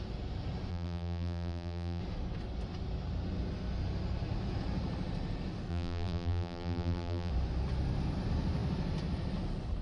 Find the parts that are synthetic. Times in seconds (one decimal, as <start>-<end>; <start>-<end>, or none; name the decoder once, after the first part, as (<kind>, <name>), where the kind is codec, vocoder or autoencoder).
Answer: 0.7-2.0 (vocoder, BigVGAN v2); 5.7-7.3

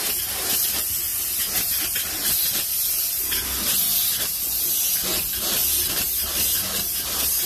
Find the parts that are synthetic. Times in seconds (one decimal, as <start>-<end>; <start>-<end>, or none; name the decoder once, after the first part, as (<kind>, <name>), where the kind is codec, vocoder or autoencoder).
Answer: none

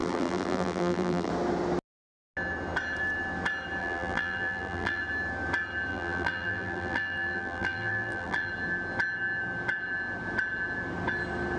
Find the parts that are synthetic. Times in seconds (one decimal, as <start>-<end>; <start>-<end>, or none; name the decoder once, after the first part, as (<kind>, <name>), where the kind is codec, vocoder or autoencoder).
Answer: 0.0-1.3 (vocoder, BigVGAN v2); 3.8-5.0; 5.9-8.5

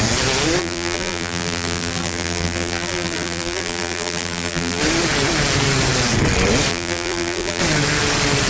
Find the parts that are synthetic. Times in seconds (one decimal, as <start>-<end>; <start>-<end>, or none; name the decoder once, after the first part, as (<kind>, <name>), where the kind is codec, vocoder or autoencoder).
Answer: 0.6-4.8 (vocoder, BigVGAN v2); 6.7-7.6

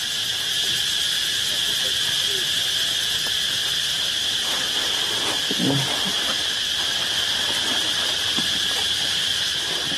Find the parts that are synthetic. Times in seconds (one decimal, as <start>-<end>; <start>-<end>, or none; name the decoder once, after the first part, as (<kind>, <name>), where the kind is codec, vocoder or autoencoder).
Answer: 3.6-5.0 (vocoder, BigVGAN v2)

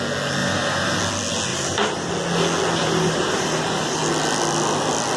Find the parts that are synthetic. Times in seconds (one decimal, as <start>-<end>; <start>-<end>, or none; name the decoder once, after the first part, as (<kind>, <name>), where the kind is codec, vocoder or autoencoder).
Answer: 0.4-1.0 (vocoder, BigVGAN v2); 1.5-2.1; 2.8-4.0